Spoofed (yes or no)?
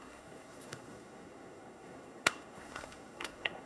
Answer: yes